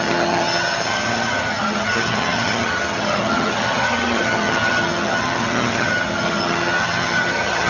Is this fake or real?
fake